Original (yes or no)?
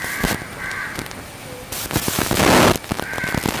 yes